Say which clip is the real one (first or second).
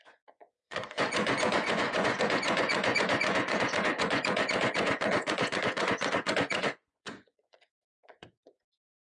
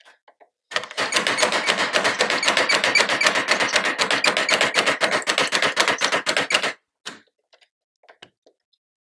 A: second